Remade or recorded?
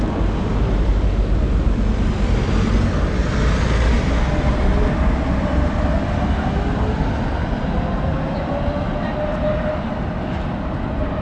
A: recorded